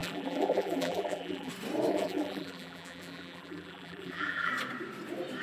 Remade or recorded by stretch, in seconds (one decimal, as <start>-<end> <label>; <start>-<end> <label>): 0.0-1.5 remade; 1.5-1.9 recorded; 1.9-4.5 remade; 4.5-5.4 recorded